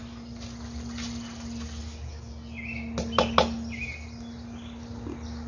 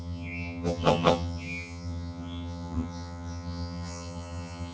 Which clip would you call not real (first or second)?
second